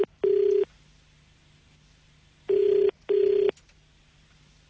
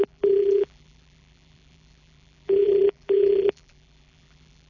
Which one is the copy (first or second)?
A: second